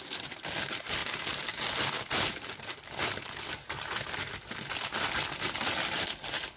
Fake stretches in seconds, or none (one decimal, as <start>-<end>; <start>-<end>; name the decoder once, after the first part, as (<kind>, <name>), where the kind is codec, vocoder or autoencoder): none